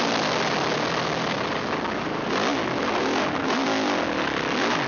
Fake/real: real